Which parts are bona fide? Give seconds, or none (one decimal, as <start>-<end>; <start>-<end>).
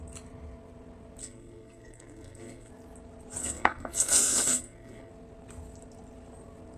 0.0-1.2; 2.7-3.4; 5.1-6.8